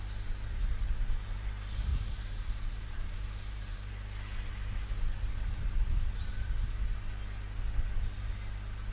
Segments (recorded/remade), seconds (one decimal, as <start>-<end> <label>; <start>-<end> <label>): 0.0-1.9 recorded; 1.9-3.9 remade; 3.9-8.9 recorded